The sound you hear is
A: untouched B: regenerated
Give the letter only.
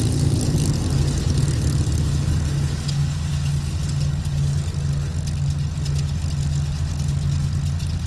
A